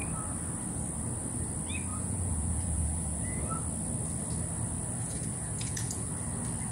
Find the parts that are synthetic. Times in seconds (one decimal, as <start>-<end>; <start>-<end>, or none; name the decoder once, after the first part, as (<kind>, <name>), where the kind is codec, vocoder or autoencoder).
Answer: 1.9-3.4 (vocoder, Vocos); 5.0-6.1